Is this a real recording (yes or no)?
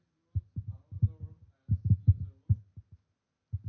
yes